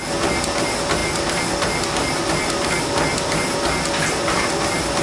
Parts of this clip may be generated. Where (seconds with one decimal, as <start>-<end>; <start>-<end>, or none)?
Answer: none